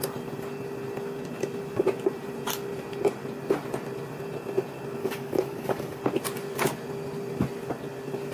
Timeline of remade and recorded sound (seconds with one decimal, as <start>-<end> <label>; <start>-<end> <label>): 0.0-5.0 recorded; 5.0-6.0 remade; 6.0-8.3 recorded

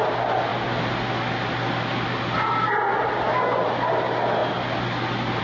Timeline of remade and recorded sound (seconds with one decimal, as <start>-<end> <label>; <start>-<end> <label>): 0.0-5.4 recorded

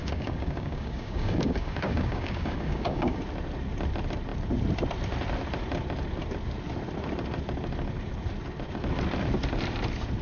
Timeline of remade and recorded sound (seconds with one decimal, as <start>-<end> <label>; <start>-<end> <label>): 0.0-3.2 remade; 3.2-10.2 recorded

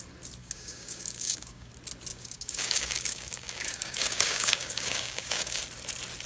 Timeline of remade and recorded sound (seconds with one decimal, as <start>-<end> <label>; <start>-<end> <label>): 0.0-0.4 recorded; 0.4-1.7 remade; 1.7-2.1 recorded; 2.1-5.6 remade; 5.6-6.3 recorded

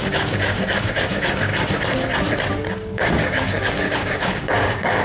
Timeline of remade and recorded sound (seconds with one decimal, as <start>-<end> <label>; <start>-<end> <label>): 0.0-1.5 remade; 1.5-2.7 recorded; 2.7-5.0 remade

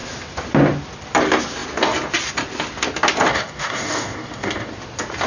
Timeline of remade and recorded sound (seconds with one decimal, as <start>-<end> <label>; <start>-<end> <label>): 0.0-3.3 recorded; 3.3-4.7 remade; 4.7-5.3 recorded

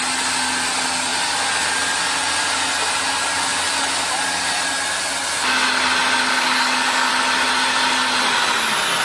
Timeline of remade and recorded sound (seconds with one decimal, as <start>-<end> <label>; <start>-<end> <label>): 0.0-6.3 recorded; 6.3-7.1 remade; 7.1-9.0 recorded

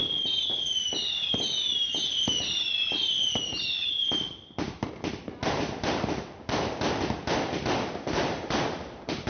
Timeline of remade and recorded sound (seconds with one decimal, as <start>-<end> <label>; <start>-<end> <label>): 0.0-9.3 recorded